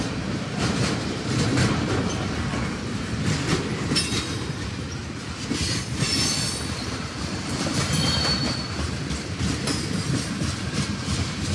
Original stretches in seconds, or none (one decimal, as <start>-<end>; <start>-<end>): 1.5-2.7; 3.5-4.6; 5.0-6.9